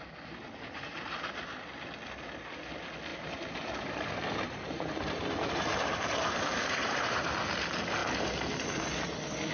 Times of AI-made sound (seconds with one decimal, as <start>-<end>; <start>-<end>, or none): 3.1-7.3